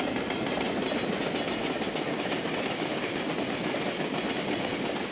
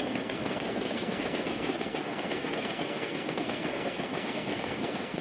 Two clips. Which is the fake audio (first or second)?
second